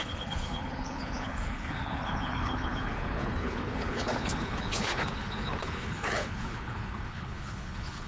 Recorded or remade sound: remade